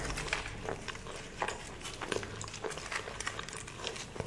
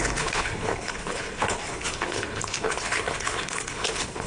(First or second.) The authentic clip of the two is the first